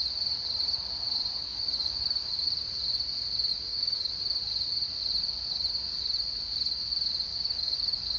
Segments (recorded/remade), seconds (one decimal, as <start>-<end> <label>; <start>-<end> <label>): 0.0-1.5 recorded; 1.5-2.3 remade; 2.3-3.5 recorded; 3.5-4.1 remade; 4.1-7.3 recorded; 7.3-8.2 remade